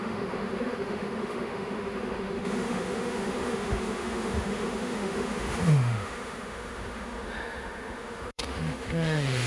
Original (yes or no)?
no